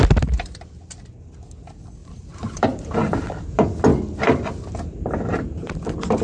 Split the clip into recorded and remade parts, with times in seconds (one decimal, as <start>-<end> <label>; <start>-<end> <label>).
0.0-2.0 recorded; 2.0-3.0 remade; 3.0-6.2 recorded